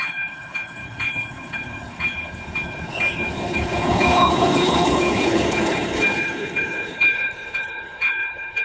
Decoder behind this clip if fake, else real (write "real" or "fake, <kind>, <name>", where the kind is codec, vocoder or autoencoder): fake, codec, HILCodec